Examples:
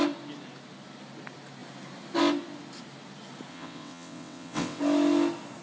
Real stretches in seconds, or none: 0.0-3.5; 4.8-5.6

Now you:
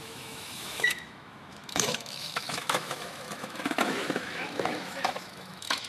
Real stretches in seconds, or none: none

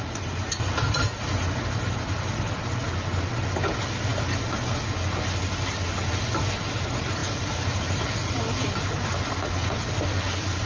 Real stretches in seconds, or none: 0.0-10.7

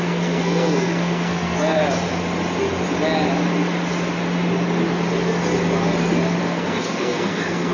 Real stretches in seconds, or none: 1.8-6.4

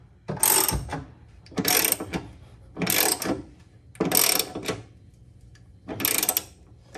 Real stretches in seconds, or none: 0.0-7.0